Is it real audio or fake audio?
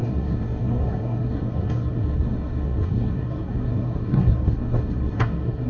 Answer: fake